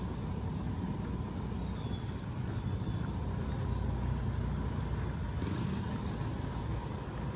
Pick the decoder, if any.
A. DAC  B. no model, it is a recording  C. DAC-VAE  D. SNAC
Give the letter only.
B